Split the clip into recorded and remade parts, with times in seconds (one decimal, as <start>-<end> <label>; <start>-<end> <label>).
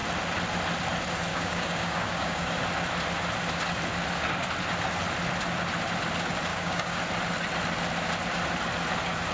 0.0-1.3 recorded; 1.3-2.5 remade; 2.5-6.5 recorded; 6.5-7.0 remade; 7.0-9.3 recorded